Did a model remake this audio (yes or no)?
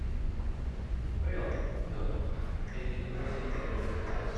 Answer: yes